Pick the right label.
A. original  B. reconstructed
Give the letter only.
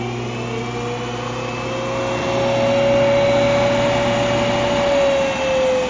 A